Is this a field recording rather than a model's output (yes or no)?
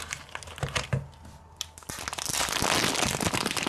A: yes